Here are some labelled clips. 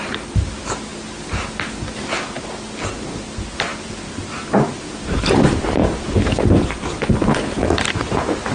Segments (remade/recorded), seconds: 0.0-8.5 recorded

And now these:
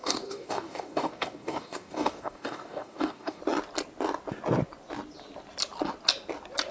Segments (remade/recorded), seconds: 0.0-3.4 remade; 3.4-6.7 recorded

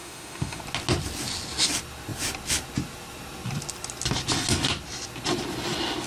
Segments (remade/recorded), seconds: 0.0-0.6 remade; 0.6-6.1 recorded

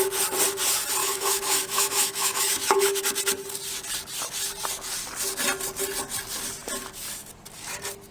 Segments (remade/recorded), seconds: 0.0-1.0 recorded; 1.0-3.0 remade; 3.0-8.1 recorded

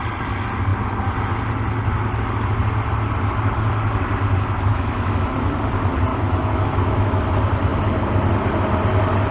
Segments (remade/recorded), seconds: 0.0-4.7 recorded; 4.7-5.5 remade; 5.5-6.1 recorded; 6.1-7.2 remade; 7.2-9.3 recorded